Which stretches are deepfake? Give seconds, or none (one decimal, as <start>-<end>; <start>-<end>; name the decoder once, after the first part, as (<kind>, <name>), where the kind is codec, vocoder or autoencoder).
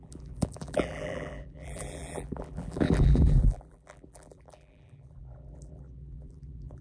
0.0-6.8 (vocoder, BigVGAN v2)